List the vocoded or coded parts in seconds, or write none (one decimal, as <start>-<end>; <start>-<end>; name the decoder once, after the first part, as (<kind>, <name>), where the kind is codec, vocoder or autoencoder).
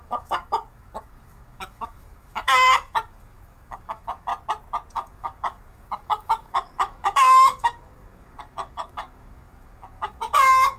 0.0-4.3 (codec, DAC); 4.9-10.8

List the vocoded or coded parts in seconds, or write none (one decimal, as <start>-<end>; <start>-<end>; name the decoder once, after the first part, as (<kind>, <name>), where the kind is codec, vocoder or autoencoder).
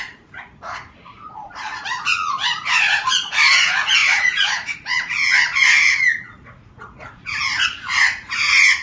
0.0-8.8 (vocoder, Vocos)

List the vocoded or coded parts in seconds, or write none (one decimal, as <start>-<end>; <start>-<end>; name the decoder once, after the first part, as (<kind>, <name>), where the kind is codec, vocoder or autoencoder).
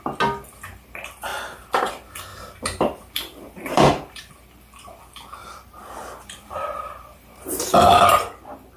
2.3-4.3 (vocoder, BigVGAN v2); 5.4-7.9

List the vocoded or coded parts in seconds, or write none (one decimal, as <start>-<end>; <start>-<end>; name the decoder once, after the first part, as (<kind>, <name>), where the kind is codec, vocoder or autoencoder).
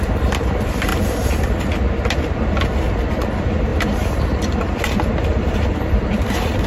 0.0-0.9 (vocoder, BigVGAN v2); 3.1-6.7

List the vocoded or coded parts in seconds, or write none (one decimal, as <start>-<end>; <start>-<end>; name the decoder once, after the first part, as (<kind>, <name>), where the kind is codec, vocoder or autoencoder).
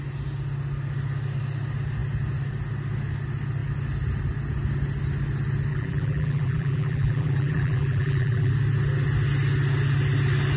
5.7-8.5 (vocoder, BigVGAN v2)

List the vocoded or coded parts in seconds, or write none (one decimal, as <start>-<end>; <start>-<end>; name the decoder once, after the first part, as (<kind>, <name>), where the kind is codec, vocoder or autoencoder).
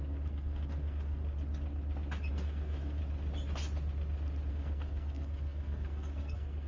0.0-1.2 (codec, SNAC); 2.3-3.0; 4.5-6.7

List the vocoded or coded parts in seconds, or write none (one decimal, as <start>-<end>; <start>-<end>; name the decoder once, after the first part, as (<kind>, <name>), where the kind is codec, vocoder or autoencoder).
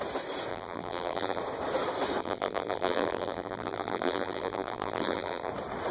0.5-1.4 (vocoder, BigVGAN v2); 2.2-5.5